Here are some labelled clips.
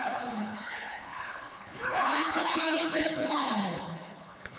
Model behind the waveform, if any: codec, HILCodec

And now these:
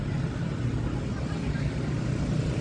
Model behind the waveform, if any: none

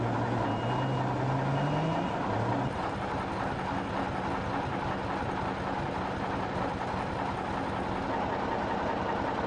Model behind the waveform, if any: none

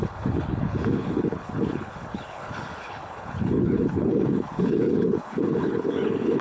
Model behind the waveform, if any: codec, HILCodec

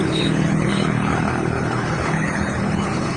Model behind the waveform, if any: codec, HILCodec